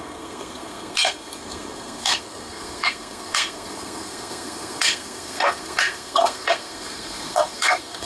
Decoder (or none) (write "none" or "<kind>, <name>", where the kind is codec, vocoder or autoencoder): codec, SNAC